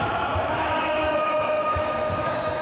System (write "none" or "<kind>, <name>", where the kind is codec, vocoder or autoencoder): autoencoder, DAC-VAE